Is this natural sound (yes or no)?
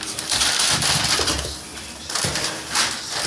yes